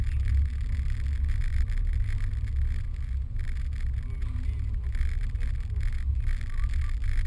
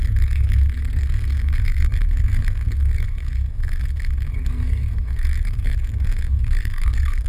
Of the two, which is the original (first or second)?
first